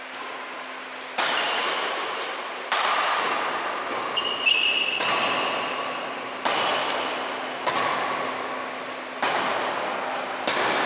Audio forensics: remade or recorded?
recorded